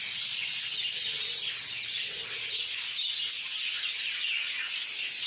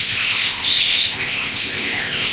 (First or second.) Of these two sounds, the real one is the first